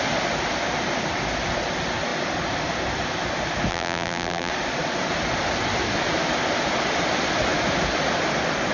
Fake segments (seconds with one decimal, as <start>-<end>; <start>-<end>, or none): 3.7-4.5